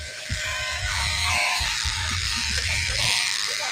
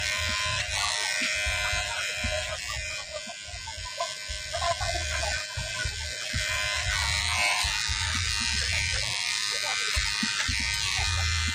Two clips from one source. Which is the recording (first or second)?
second